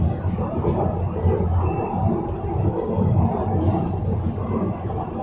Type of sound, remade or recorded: recorded